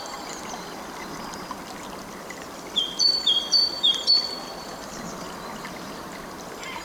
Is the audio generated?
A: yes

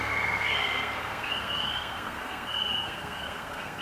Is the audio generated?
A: yes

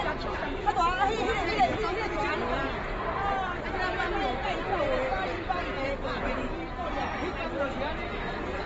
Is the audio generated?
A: yes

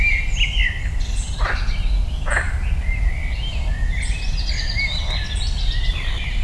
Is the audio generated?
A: no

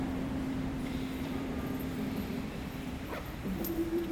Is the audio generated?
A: yes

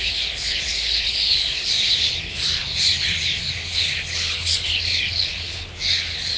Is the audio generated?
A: yes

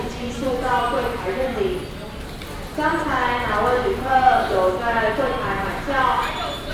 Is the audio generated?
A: no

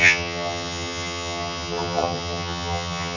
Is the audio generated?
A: yes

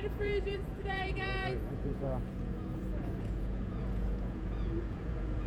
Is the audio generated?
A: yes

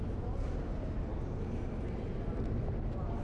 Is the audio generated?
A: no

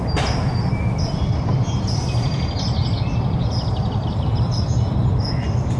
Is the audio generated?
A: no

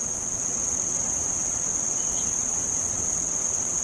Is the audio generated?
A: yes